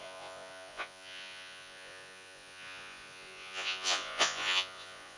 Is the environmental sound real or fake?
fake